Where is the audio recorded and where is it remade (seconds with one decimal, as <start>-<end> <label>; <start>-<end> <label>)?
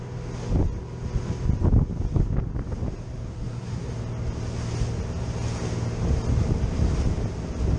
0.0-3.3 recorded; 3.3-3.9 remade; 3.9-7.8 recorded